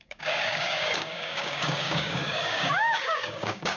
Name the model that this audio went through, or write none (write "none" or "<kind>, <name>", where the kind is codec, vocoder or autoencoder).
codec, DAC